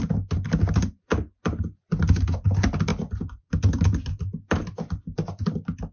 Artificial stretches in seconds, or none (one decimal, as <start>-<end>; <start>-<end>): none